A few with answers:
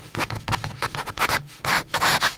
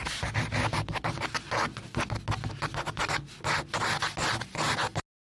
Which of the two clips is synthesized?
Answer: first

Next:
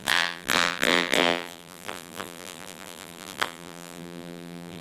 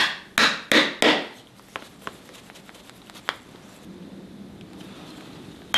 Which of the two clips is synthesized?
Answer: first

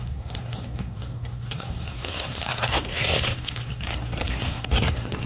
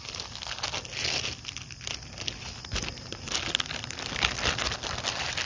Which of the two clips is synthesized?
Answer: first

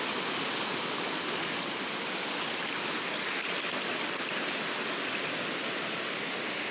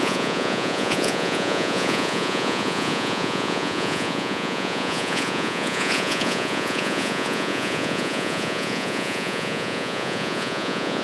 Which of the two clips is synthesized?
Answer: second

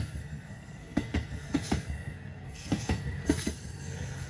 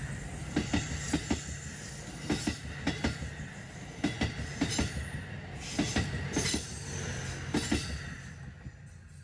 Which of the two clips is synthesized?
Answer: first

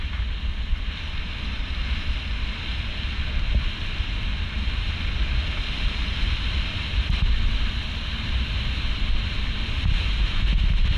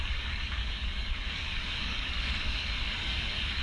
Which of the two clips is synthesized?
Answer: second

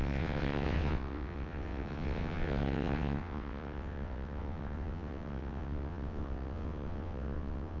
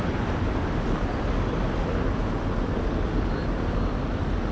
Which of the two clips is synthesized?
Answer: first